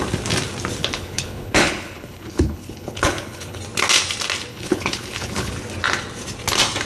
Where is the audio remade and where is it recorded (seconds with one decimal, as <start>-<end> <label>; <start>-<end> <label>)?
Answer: 0.0-0.8 recorded; 0.8-3.6 remade; 3.6-4.5 recorded; 4.5-5.5 remade; 5.5-6.9 recorded